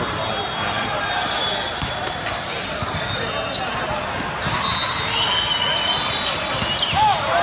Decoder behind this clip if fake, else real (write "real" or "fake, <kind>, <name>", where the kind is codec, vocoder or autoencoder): real